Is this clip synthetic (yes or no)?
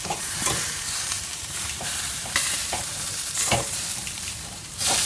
yes